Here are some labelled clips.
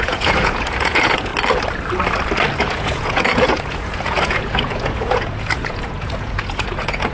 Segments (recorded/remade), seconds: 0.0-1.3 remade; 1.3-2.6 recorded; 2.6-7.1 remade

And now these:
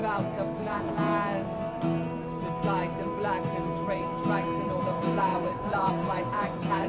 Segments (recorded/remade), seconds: 0.0-0.7 recorded; 0.7-1.1 remade; 1.1-4.8 recorded; 4.8-6.9 remade

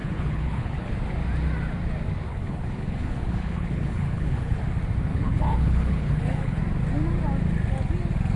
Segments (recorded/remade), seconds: 0.0-0.9 remade; 0.9-2.3 recorded; 2.3-4.6 remade; 4.6-5.1 recorded; 5.1-6.6 remade; 6.6-8.4 recorded

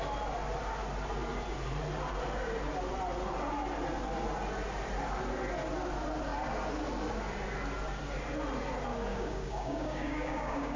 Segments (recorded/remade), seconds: 0.0-9.1 recorded; 9.1-10.8 remade